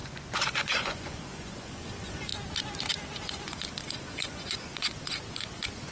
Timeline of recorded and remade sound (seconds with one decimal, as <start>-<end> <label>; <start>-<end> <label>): 0.0-2.3 remade; 2.3-3.2 recorded; 3.2-5.9 remade